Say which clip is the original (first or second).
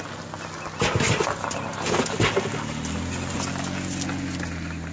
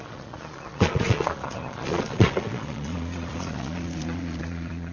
first